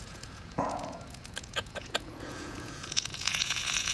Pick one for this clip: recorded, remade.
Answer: remade